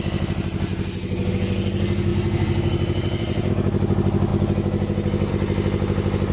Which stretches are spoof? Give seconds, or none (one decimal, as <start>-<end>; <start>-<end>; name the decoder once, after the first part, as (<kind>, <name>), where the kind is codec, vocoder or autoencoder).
2.1-3.5 (vocoder, BigVGAN v2)